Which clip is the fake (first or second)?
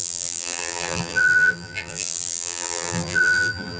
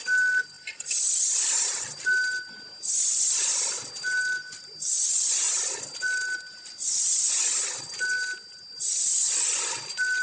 first